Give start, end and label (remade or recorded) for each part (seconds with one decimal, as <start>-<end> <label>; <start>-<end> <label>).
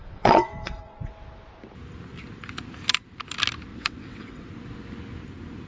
0.0-1.1 remade; 1.1-3.7 recorded; 3.7-4.5 remade; 4.5-5.7 recorded